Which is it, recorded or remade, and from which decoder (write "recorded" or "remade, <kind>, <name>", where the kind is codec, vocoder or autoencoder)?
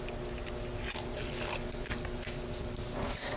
recorded